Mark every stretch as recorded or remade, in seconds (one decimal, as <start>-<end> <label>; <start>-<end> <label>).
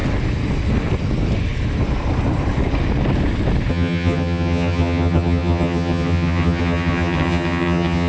0.0-3.7 recorded; 3.7-8.1 remade